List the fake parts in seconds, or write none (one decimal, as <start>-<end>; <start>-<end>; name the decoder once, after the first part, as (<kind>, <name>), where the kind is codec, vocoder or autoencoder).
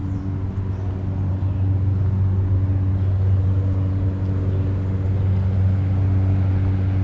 none